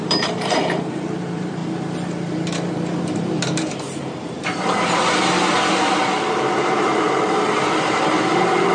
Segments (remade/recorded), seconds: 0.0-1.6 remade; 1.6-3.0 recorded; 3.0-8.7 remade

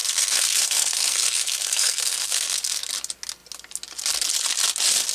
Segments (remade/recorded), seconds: 0.0-2.9 remade; 2.9-5.1 recorded

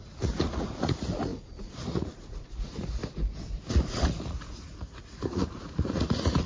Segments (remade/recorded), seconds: 0.0-3.0 remade; 3.0-3.7 recorded; 3.7-6.5 remade

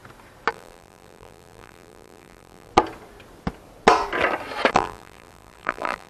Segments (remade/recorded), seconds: 0.0-0.5 recorded; 0.5-2.7 remade; 2.7-4.7 recorded; 4.7-6.1 remade

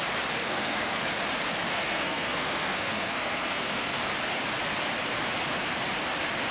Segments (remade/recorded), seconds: 0.0-0.4 recorded; 0.4-1.0 remade; 1.0-1.7 recorded; 1.7-4.0 remade; 4.0-6.5 recorded

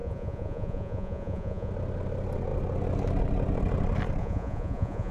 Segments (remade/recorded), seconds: 0.0-1.7 remade; 1.7-4.2 recorded; 4.2-5.1 remade